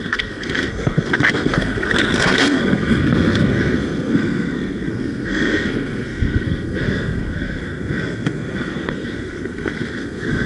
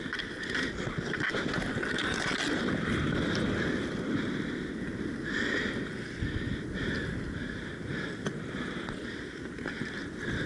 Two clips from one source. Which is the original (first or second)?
second